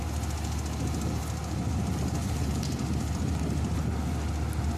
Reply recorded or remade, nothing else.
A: recorded